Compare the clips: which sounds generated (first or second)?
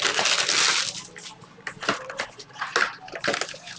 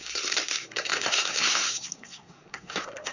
second